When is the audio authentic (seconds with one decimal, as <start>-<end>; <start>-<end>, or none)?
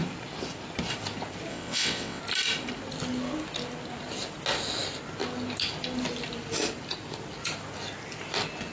0.0-1.5; 2.2-8.7